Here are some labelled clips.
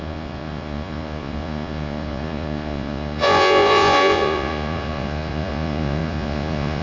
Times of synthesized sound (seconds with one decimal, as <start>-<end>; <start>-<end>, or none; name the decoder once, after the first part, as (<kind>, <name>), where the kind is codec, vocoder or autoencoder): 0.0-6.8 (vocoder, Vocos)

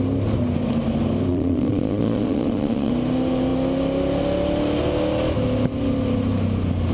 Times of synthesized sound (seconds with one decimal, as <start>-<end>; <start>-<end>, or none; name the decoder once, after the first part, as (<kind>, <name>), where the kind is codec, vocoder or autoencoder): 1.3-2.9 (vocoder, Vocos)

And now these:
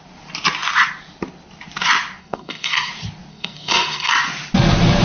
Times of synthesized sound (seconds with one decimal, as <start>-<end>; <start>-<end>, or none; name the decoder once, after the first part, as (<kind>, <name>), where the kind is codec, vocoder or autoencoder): 2.2-2.9 (codec, SNAC); 3.3-4.1

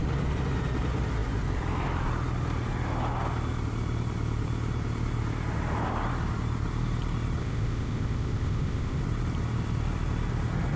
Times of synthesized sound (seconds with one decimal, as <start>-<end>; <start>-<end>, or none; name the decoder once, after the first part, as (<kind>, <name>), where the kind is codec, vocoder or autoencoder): 7.4-9.0 (codec, ZipCodec)

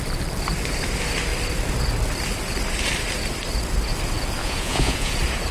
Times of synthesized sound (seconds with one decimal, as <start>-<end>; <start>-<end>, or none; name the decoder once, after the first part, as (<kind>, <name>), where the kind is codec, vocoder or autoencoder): 4.4-5.1 (vocoder, Vocos)